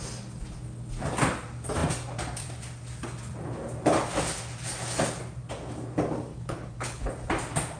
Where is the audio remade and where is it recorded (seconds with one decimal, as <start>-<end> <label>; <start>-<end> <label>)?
0.0-6.3 recorded; 6.3-7.1 remade; 7.1-7.8 recorded